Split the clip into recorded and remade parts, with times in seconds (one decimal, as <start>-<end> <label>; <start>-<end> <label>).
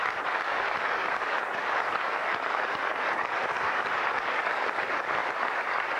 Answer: 0.0-6.0 remade